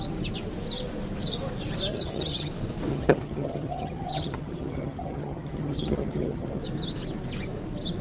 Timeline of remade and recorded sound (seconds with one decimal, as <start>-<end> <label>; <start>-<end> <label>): 0.0-1.9 recorded; 1.9-2.5 remade; 2.5-2.9 recorded; 2.9-6.6 remade; 6.6-8.0 recorded